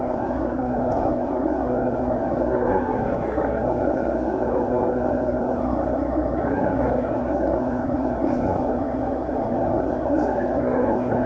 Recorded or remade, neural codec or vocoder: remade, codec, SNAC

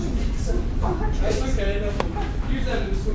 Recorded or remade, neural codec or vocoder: recorded